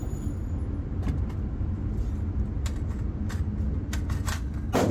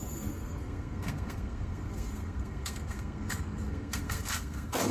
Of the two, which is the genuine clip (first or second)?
first